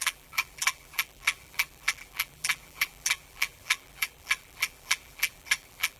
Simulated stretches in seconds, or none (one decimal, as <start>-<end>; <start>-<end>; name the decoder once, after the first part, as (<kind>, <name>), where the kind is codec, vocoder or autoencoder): 0.0-6.0 (vocoder, BigVGAN v2)